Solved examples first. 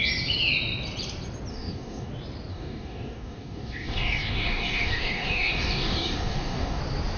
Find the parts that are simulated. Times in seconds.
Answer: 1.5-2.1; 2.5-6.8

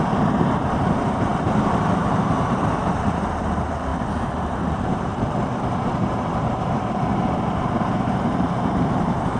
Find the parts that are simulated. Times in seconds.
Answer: 0.0-5.1; 5.8-9.4

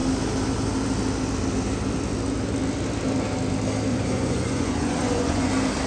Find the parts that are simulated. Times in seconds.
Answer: 3.9-5.5

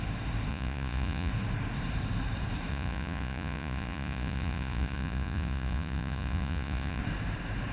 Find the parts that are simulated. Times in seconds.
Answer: 0.5-1.3; 2.7-7.0